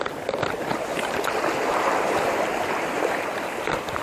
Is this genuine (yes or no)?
yes